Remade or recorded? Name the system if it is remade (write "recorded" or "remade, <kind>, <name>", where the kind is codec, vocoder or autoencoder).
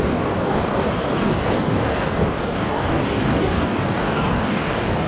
remade, codec, DAC